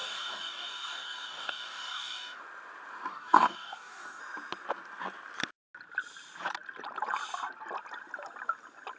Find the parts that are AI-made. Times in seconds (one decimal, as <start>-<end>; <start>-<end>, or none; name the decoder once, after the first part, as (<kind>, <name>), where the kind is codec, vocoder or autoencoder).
0.0-2.4 (codec, DAC); 3.1-4.2